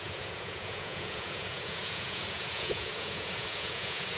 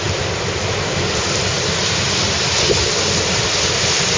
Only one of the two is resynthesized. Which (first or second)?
first